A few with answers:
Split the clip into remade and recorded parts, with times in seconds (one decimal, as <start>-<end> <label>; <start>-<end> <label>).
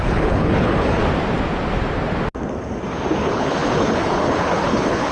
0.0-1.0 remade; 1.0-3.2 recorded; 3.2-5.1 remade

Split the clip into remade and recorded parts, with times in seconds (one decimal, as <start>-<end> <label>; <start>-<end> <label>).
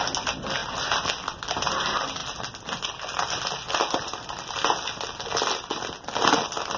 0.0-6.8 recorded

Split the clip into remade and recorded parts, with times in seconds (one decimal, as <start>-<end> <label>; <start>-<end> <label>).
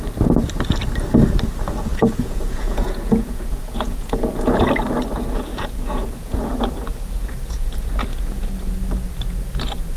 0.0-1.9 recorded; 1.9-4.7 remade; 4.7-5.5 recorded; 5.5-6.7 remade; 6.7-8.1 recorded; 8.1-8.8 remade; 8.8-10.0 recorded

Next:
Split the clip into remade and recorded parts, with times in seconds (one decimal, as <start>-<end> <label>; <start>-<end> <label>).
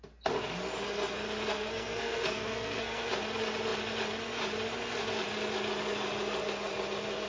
0.0-1.5 recorded; 1.5-3.1 remade; 3.1-7.3 recorded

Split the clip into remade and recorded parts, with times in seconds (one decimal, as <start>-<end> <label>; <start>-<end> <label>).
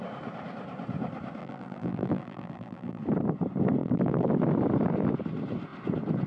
0.0-1.4 recorded; 1.4-3.0 remade; 3.0-3.8 recorded; 3.8-4.3 remade; 4.3-6.3 recorded